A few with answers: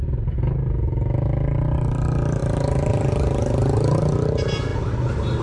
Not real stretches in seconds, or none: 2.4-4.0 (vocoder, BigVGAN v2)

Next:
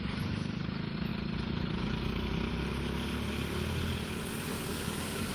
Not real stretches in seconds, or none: 4.5-5.3 (codec, DAC)

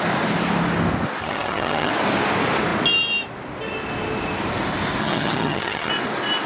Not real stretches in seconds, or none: 1.2-1.9 (vocoder, HiFi-GAN); 5.0-5.9

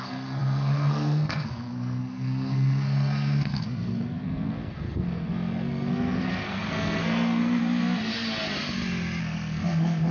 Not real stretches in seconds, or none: 0.0-7.6 (codec, SNAC); 9.2-10.1